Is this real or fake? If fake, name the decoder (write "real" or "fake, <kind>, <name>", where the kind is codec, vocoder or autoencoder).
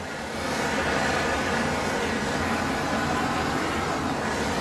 real